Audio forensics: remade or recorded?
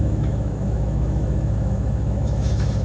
remade